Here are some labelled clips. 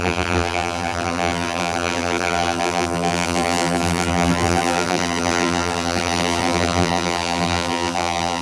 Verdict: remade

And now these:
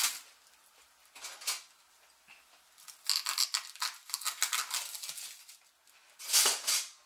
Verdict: recorded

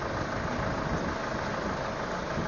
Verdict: recorded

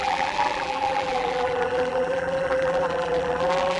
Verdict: remade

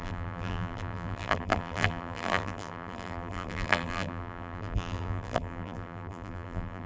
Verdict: remade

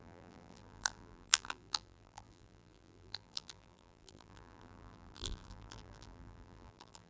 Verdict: remade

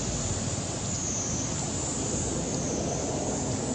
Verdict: recorded